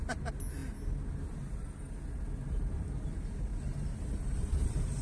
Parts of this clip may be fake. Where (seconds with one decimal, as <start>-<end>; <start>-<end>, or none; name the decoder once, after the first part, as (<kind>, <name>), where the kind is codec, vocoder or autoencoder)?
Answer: 3.5-5.0 (vocoder, BigVGAN v2)